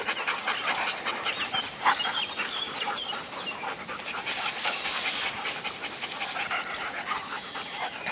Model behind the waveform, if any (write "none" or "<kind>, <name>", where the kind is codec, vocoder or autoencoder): none